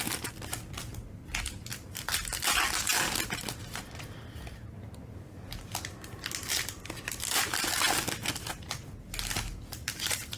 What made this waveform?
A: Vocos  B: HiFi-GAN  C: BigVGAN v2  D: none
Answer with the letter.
D